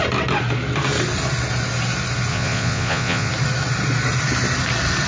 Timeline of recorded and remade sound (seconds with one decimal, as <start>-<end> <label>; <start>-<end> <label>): 0.0-2.3 recorded; 2.3-3.3 remade; 3.3-5.1 recorded